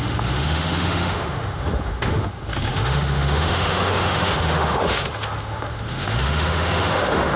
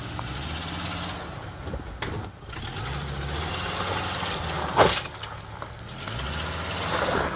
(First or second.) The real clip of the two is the second